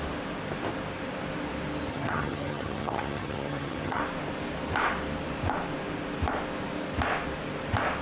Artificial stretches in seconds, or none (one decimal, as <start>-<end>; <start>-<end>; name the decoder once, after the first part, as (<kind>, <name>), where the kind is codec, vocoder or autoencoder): 1.9-4.0 (vocoder, HiFi-GAN)

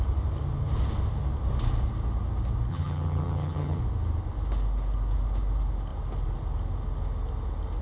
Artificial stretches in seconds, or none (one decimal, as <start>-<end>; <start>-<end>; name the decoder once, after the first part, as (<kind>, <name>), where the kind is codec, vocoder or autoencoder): 2.7-3.8 (vocoder, HiFi-GAN)

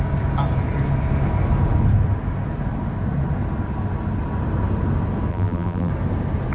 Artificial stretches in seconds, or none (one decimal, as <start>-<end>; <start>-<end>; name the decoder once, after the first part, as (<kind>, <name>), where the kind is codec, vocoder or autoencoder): 5.3-5.9 (vocoder, BigVGAN v2)

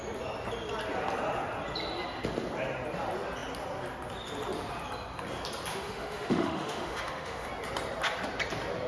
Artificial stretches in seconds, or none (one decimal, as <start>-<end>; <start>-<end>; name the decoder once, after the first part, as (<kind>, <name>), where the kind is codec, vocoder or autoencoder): 5.7-7.5 (autoencoder, DAC-VAE)

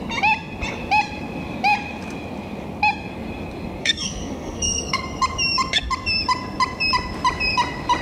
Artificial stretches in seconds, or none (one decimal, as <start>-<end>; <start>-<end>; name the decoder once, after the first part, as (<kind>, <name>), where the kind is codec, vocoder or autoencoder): 3.8-5.0 (codec, SNAC)

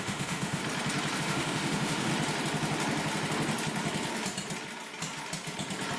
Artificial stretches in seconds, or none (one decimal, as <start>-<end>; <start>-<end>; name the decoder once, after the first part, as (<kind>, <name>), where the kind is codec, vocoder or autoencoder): 0.0-0.6 (autoencoder, DAC-VAE); 1.2-2.1

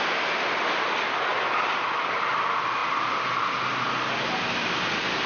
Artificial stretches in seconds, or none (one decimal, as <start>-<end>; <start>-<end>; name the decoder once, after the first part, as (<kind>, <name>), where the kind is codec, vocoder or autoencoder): none